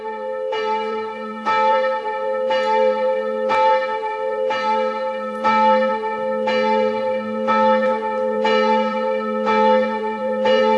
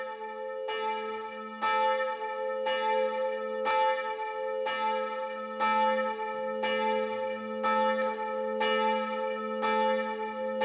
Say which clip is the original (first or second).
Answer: second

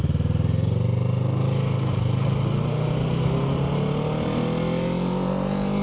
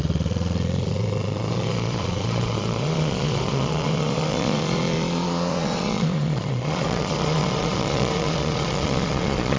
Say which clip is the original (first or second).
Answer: first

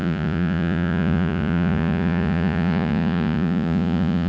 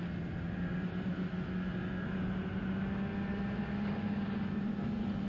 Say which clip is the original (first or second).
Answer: second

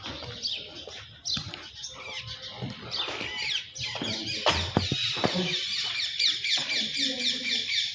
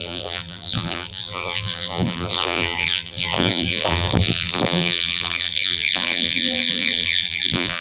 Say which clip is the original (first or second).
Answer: first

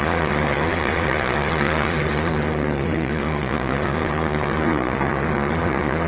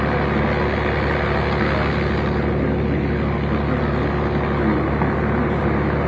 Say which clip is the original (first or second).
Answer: second